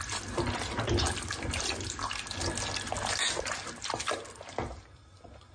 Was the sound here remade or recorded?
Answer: recorded